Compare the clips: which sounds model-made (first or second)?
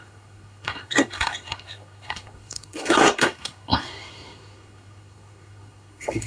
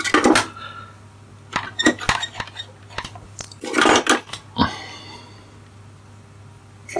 first